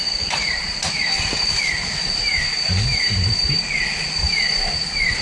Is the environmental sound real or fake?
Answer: real